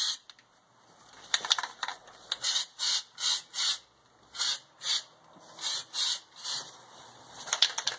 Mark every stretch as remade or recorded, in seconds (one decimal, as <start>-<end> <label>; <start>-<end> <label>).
0.0-1.9 remade; 1.9-6.7 recorded; 6.7-8.0 remade